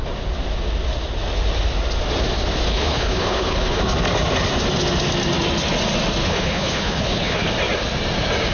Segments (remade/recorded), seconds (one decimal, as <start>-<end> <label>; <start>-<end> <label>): 0.0-2.7 recorded; 2.7-3.8 remade; 3.8-6.2 recorded; 6.2-7.5 remade; 7.5-8.5 recorded